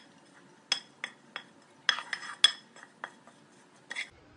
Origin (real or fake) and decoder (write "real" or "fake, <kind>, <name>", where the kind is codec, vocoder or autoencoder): real